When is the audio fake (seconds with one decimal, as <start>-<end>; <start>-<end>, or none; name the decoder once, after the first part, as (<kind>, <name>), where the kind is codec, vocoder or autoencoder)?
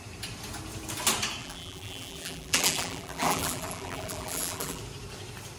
1.4-4.8 (vocoder, BigVGAN v2)